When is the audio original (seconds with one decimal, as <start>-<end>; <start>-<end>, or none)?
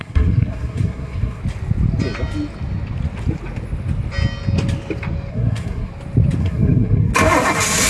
1.4-5.3; 5.9-6.4; 7.1-7.9